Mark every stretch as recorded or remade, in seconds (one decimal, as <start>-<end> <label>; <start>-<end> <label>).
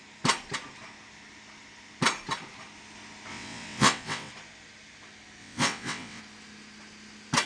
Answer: 0.0-3.3 recorded; 3.3-4.3 remade; 4.3-5.4 recorded; 5.4-6.2 remade; 6.2-7.5 recorded